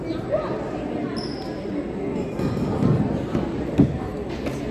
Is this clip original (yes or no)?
yes